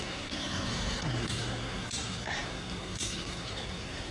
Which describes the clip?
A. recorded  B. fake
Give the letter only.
B